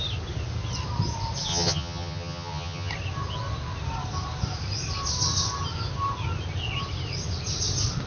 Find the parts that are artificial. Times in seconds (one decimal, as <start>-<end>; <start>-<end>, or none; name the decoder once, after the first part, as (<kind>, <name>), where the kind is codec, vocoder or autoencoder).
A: 1.5-2.9 (vocoder, HiFi-GAN)